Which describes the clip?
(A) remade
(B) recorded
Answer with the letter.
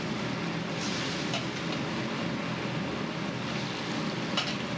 B